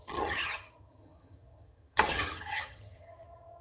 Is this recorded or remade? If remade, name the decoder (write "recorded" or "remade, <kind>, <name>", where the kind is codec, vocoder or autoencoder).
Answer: remade, vocoder, HiFi-GAN